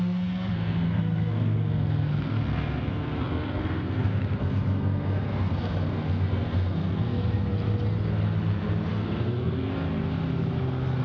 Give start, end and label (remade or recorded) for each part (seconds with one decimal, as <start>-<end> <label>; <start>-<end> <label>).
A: 0.0-7.5 remade; 7.5-8.9 recorded; 8.9-9.7 remade; 9.7-11.0 recorded